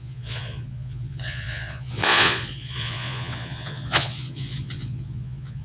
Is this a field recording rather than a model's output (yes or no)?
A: no